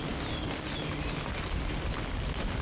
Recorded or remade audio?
recorded